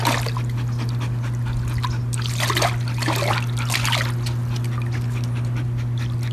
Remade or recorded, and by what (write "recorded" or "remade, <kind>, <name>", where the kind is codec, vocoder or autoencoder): recorded